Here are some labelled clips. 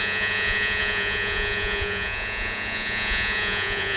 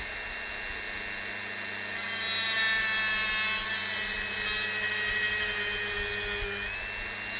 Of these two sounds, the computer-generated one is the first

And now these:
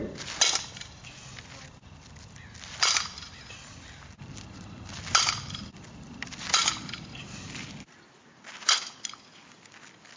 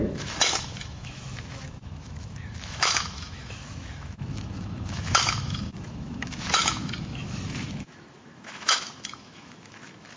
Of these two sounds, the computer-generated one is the second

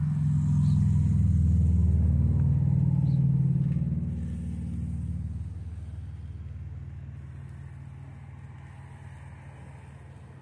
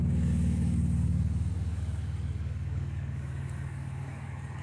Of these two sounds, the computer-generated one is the second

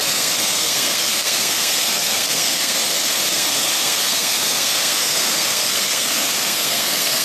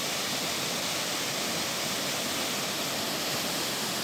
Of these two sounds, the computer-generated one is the first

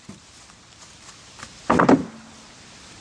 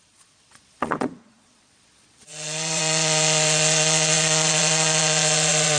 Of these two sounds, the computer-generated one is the second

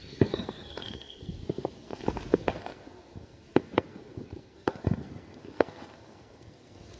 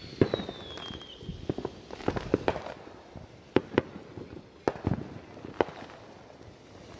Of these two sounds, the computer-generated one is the first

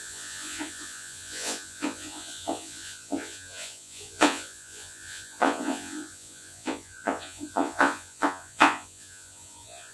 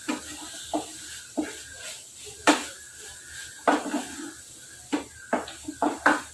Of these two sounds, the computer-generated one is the first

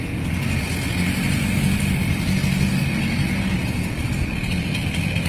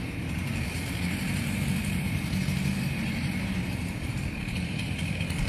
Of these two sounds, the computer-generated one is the second